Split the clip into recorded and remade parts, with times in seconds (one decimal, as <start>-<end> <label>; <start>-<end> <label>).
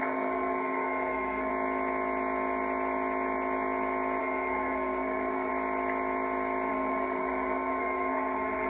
0.0-1.5 remade; 1.5-4.2 recorded; 4.2-5.5 remade; 5.5-6.7 recorded; 6.7-8.7 remade